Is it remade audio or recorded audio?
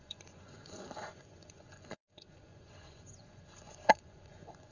remade